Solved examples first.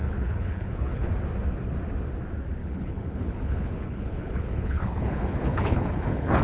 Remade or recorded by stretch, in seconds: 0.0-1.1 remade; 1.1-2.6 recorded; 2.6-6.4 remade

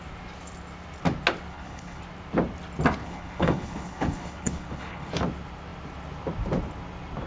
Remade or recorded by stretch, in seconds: 0.0-1.5 recorded; 1.5-2.0 remade; 2.0-3.0 recorded; 3.0-5.1 remade; 5.1-7.3 recorded

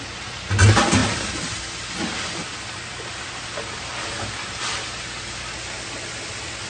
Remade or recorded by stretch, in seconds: 0.0-6.7 recorded

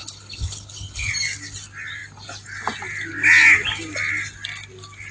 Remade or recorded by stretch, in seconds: 0.0-1.1 remade; 1.1-5.1 recorded

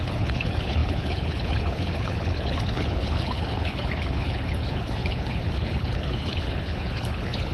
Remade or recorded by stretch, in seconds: 0.0-7.5 remade

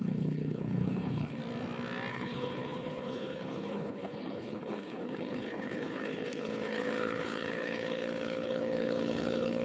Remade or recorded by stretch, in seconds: 0.0-1.4 remade; 1.4-2.1 recorded; 2.1-9.6 remade

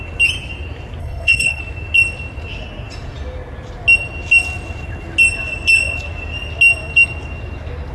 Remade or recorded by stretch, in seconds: 0.0-1.0 recorded; 1.0-1.6 remade; 1.6-7.9 recorded

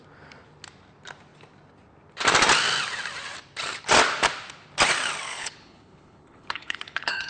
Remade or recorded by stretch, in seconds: 0.0-5.3 recorded; 5.3-7.3 remade